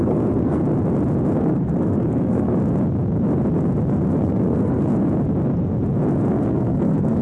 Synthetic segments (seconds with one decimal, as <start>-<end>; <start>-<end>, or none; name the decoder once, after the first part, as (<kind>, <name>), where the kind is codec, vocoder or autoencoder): 0.0-0.6 (codec, SNAC); 1.4-2.5; 4.2-4.9; 6.3-7.2